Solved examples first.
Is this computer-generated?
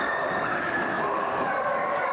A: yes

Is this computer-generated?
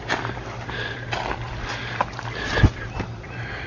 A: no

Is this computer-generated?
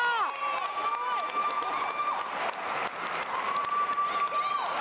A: no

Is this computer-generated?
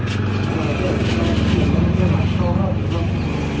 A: no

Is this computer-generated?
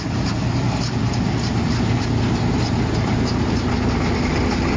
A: no